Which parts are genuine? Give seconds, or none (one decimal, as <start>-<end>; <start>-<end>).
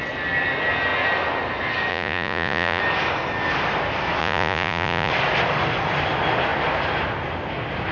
0.0-1.9; 2.8-4.2; 5.1-7.9